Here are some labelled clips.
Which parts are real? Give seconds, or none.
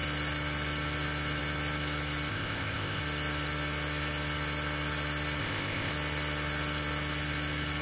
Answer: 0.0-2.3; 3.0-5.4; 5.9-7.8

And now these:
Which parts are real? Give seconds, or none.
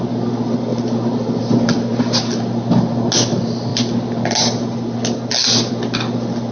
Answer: 0.0-6.5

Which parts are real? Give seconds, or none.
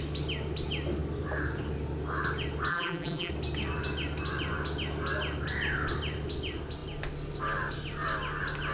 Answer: 0.0-2.7; 3.3-8.7